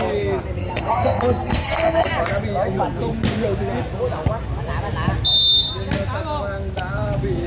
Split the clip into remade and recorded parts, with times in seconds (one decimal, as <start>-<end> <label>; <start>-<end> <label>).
0.0-0.6 recorded; 0.6-2.1 remade; 2.1-7.5 recorded